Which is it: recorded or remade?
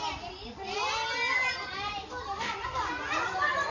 recorded